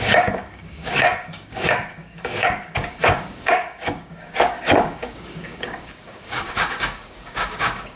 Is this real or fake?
fake